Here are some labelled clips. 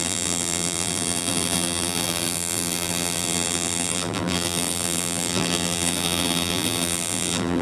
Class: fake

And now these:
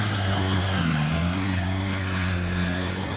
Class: fake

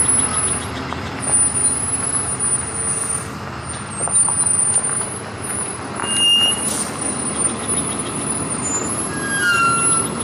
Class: real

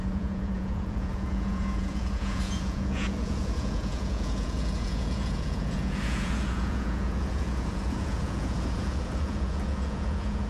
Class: fake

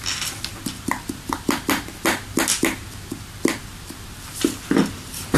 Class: real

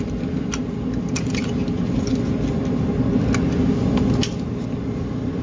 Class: real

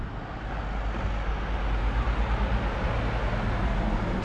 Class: real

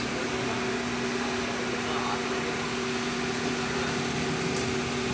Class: real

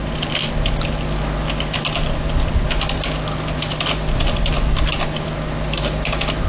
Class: real